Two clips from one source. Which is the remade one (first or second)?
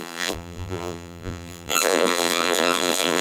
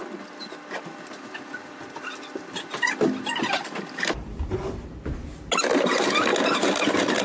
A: first